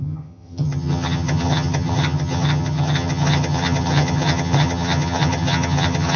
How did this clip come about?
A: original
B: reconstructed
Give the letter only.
B